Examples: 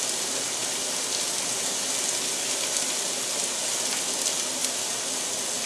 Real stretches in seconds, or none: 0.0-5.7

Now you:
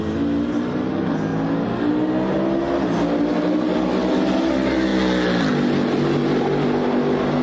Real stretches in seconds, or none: 0.0-7.4

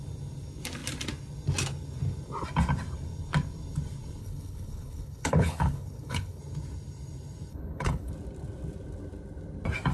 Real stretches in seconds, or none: 0.0-4.2; 6.4-7.5; 8.1-9.9

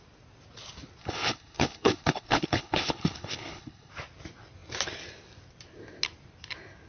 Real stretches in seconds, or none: 0.0-1.0; 3.9-6.9